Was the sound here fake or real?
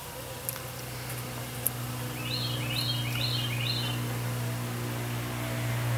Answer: real